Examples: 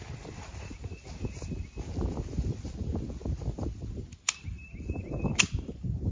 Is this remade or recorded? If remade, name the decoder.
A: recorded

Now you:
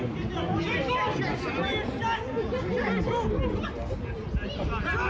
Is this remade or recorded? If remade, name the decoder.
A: recorded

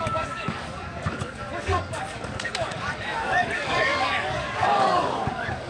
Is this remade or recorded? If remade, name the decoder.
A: remade, codec, DAC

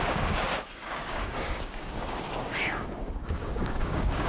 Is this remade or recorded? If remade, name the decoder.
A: remade, codec, DAC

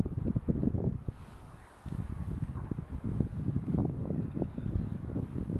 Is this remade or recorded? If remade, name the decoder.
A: remade, codec, DAC